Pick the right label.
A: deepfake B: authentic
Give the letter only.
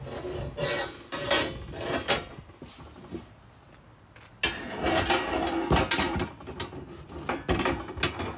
B